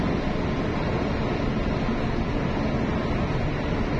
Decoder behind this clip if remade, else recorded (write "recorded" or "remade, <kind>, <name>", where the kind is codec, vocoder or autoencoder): recorded